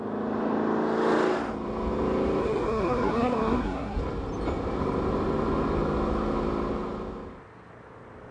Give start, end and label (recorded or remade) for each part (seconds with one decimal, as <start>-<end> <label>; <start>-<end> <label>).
0.0-2.4 recorded; 2.4-4.0 remade; 4.0-8.3 recorded